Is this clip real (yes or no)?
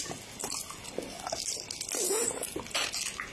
yes